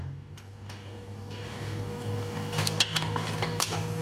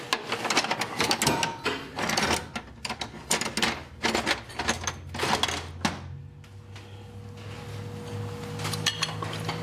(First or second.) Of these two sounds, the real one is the second